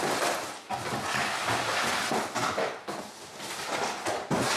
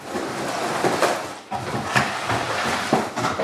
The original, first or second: first